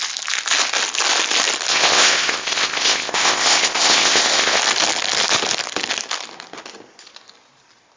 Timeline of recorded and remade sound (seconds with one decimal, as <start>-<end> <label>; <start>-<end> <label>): 0.0-1.7 recorded; 1.7-4.6 remade; 4.6-8.0 recorded